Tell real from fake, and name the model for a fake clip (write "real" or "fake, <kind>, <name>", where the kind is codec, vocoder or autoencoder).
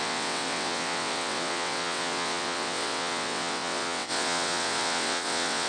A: fake, vocoder, WaveNeXt